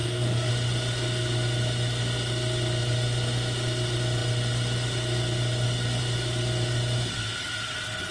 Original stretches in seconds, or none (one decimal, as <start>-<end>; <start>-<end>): 0.5-8.1